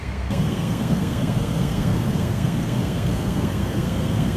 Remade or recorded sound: remade